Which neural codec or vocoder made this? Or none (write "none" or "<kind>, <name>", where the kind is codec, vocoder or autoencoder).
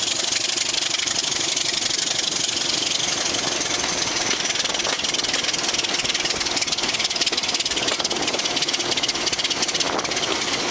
none